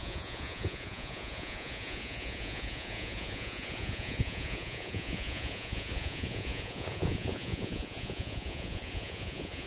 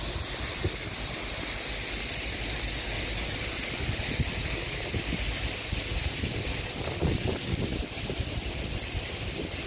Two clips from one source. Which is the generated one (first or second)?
first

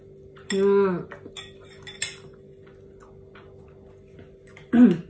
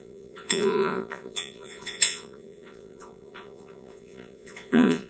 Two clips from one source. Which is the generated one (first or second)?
second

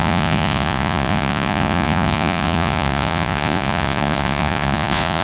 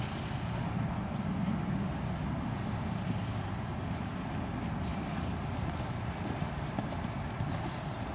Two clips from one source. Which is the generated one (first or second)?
first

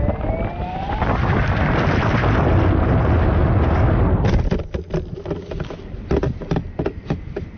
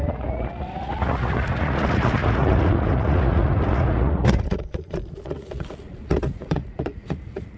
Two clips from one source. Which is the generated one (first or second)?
second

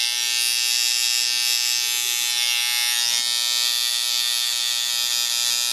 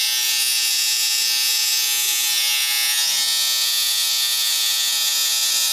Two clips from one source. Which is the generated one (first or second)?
second